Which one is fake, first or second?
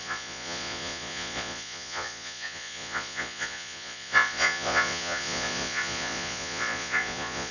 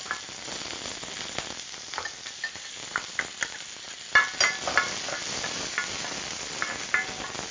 first